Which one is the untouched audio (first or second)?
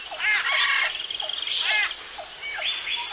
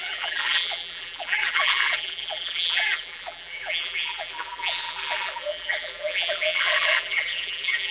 first